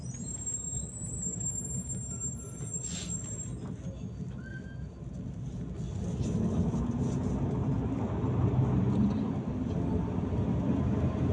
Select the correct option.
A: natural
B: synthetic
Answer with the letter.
A